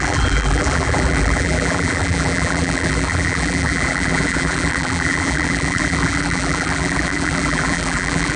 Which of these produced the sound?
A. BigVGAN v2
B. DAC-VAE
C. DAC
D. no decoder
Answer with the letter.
A